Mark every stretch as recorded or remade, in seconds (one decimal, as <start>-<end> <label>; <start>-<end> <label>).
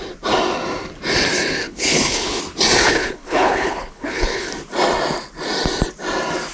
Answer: 0.0-1.6 recorded; 1.6-2.4 remade; 2.4-2.8 recorded; 2.8-4.5 remade; 4.5-6.5 recorded